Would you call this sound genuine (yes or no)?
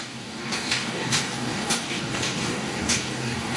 no